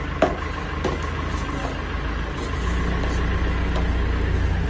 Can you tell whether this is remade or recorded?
recorded